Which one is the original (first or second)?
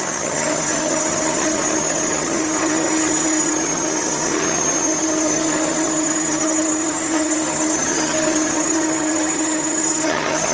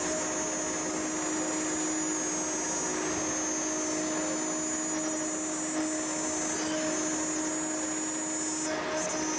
second